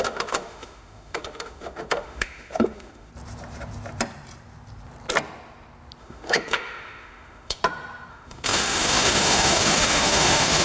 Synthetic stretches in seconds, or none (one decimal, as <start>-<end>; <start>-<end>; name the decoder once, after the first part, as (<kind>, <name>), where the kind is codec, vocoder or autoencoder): 0.0-3.1 (autoencoder, DAC-VAE); 6.0-7.6; 8.1-10.6